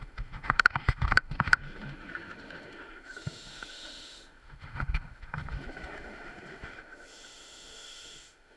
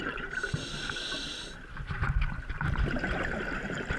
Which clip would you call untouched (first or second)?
second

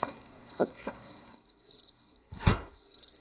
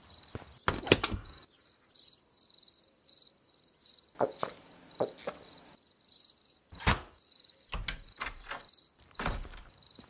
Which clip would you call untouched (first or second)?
second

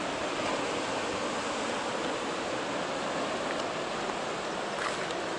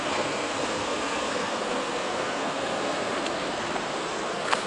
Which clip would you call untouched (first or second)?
first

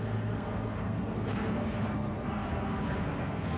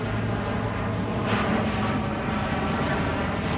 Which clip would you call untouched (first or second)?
second